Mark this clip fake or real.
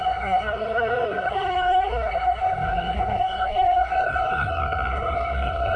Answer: fake